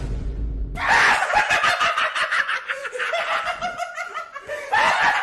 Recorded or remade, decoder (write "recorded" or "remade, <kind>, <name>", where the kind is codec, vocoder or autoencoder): remade, vocoder, Vocos